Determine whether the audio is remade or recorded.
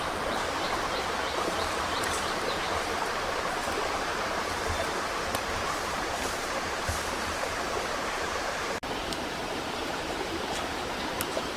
remade